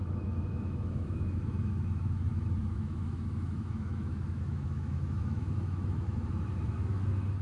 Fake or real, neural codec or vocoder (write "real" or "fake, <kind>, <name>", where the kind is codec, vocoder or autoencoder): fake, autoencoder, DAC-VAE